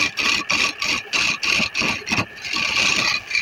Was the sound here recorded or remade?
recorded